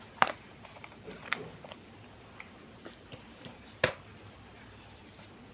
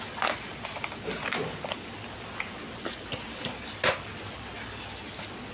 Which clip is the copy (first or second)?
first